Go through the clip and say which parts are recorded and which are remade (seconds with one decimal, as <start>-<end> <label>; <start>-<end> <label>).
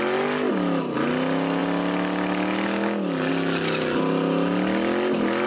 0.0-5.5 recorded